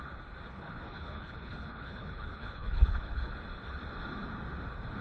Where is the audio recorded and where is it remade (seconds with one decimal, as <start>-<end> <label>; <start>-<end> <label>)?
0.0-0.5 recorded; 0.5-3.3 remade; 3.3-5.0 recorded